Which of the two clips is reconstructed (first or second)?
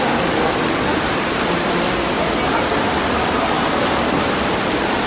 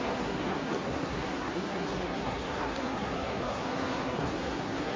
second